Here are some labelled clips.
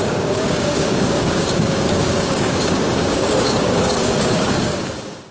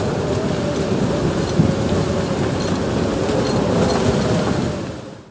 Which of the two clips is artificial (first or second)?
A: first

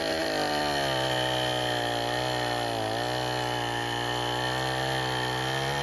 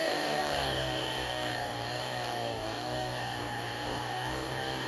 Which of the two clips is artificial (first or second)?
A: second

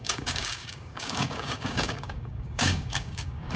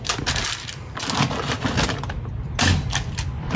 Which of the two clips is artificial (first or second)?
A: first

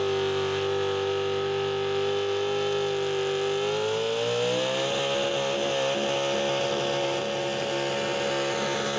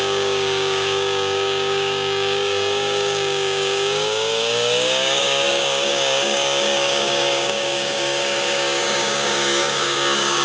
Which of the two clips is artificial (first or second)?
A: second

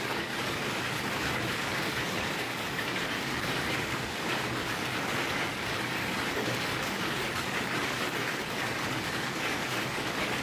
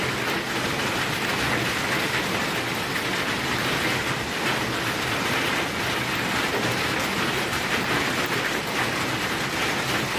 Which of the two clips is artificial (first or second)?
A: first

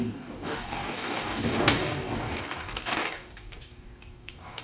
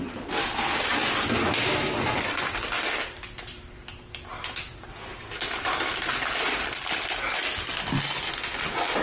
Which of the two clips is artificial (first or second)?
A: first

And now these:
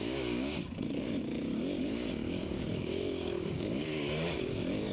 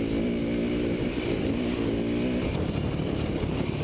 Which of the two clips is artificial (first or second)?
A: first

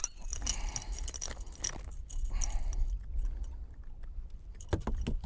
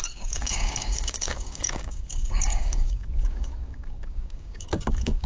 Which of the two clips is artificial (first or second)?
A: second